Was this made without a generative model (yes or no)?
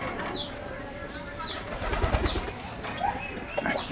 yes